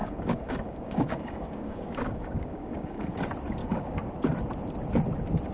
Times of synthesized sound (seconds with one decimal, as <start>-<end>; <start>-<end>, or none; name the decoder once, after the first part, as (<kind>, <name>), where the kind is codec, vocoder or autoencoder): 0.0-3.1 (codec, DAC); 3.6-4.1

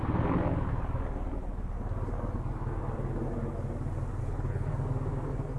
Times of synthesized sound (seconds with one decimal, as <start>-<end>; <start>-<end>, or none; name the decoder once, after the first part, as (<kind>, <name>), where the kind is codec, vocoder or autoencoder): 4.2-4.7 (codec, HILCodec)

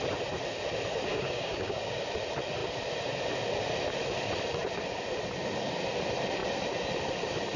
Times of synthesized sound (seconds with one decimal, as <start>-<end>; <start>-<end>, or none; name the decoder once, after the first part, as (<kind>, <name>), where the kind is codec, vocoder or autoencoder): 1.1-2.0 (codec, DAC)

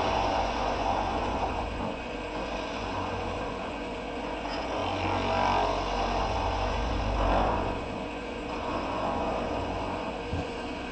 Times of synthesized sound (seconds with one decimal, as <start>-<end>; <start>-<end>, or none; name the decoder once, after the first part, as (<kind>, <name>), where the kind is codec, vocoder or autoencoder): 0.0-4.8 (vocoder, Vocos); 6.2-10.9

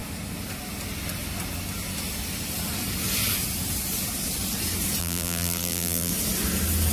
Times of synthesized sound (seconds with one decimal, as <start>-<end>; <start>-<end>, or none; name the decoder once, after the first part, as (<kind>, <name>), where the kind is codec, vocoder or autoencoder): 5.0-6.1 (vocoder, BigVGAN v2)

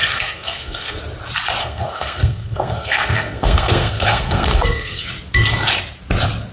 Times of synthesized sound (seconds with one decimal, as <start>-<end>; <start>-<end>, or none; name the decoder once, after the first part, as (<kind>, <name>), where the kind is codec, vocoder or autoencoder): 0.0-1.0 (codec, SNAC); 1.6-5.1